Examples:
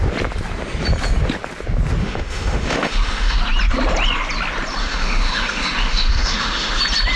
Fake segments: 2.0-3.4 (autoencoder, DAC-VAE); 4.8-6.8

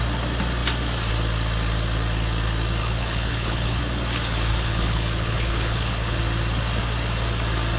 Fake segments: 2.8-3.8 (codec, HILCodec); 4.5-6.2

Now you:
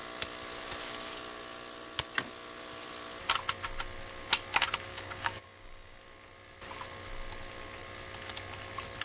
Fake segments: 4.9-6.0 (codec, DAC)

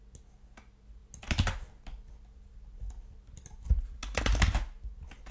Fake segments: none

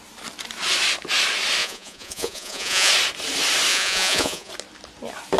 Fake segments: 1.6-2.9 (vocoder, Vocos); 3.7-4.5